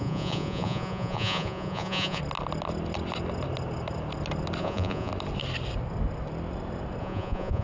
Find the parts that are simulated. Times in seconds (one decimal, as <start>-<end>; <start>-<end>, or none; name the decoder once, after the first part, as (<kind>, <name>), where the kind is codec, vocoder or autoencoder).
0.0-2.2 (vocoder, Vocos); 4.6-5.1; 7.0-7.6